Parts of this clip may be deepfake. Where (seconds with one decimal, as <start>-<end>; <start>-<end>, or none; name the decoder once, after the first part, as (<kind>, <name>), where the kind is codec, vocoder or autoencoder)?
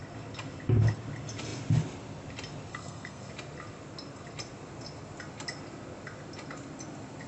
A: 2.7-3.3 (codec, SNAC)